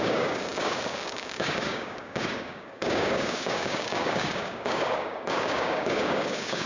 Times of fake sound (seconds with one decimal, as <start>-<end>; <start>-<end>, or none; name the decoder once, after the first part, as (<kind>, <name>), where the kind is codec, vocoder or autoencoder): 0.0-6.7 (codec, DAC)